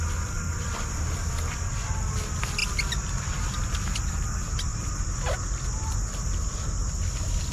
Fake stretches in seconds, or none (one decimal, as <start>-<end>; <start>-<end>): none